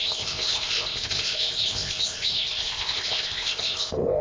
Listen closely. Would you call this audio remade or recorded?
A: remade